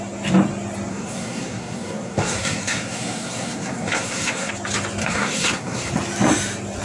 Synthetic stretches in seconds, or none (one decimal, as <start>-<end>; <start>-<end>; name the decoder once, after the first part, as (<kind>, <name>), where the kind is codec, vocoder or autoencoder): 0.9-4.5 (codec, SNAC); 5.0-5.9